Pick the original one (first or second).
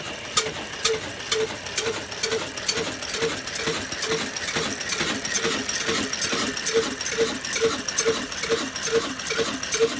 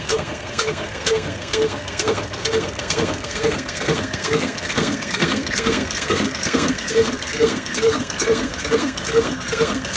first